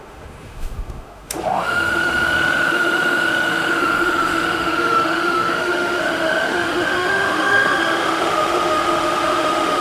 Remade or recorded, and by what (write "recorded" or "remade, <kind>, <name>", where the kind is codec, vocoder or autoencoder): remade, autoencoder, DAC-VAE